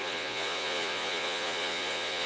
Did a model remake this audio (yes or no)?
yes